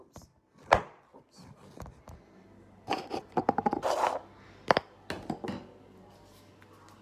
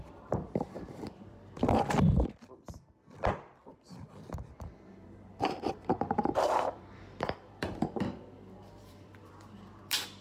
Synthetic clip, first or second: second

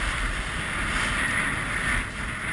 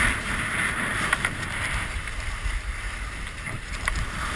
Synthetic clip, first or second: second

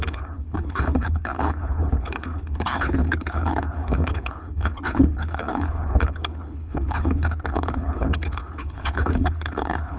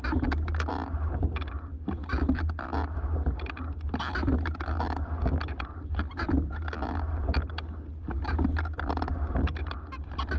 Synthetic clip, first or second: first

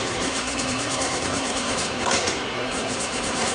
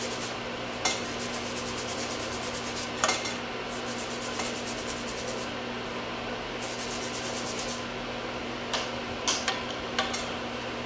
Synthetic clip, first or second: first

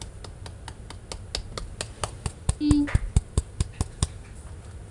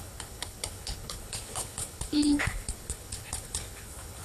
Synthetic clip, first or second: second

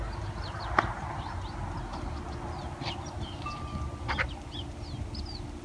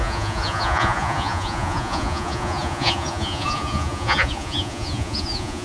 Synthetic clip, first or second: second